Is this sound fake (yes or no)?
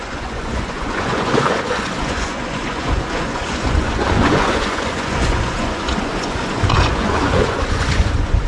yes